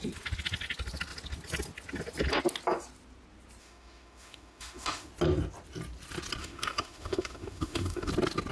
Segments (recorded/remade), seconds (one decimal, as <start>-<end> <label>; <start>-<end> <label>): 0.0-3.6 recorded; 3.6-5.1 remade; 5.1-6.4 recorded; 6.4-8.1 remade; 8.1-8.5 recorded